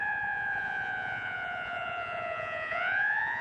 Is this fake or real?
fake